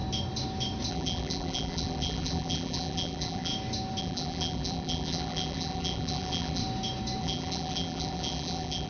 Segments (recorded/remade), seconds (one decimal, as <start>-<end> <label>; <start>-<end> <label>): 0.0-0.9 recorded; 0.9-3.5 remade; 3.5-4.0 recorded; 4.0-6.6 remade; 6.6-7.2 recorded; 7.2-8.9 remade